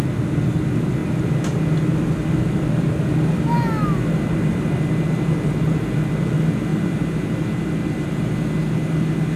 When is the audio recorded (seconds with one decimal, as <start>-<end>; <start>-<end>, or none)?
0.0-9.4